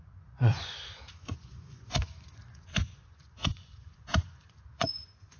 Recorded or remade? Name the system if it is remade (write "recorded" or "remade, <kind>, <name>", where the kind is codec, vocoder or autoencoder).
remade, vocoder, Vocos